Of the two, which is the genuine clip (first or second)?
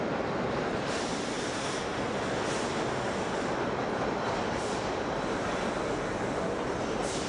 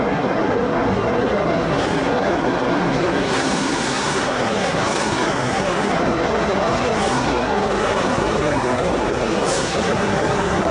first